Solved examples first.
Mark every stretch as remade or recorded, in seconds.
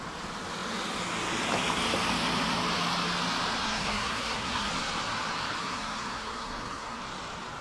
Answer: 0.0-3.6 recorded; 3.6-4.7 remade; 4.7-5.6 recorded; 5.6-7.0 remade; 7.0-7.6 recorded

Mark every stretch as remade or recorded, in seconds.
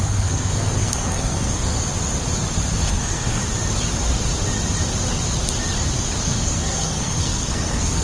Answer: 0.0-1.7 remade; 1.7-2.9 recorded; 2.9-3.4 remade; 3.4-6.2 recorded; 6.2-8.0 remade